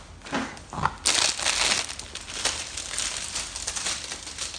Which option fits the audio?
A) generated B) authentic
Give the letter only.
B